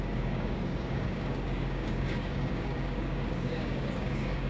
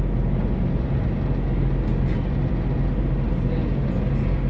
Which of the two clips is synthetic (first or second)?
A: first